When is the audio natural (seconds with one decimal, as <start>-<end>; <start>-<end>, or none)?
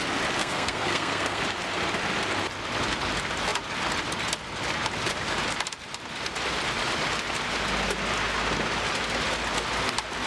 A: 0.0-0.4; 1.4-10.3